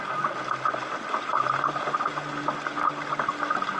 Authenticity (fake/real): real